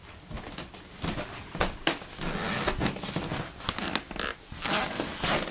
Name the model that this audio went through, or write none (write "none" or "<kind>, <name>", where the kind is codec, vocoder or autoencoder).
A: none